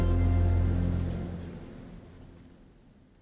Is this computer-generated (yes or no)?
no